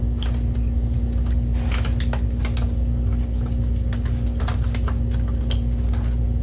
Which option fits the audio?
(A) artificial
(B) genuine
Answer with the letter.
B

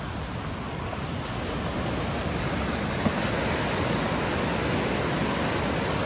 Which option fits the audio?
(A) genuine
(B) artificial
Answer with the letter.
A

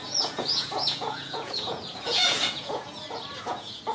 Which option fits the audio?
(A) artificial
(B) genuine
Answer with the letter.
A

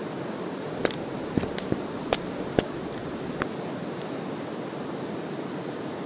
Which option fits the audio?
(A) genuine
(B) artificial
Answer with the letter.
A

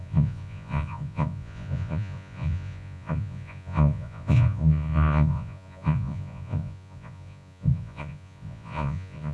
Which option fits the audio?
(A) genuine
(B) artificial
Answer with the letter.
B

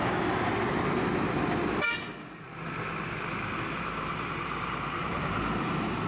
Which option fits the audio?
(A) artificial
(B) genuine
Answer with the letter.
B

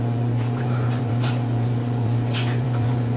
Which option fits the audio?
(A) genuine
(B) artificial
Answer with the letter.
B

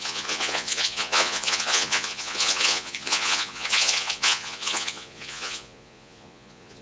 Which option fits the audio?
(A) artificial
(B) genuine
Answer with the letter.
A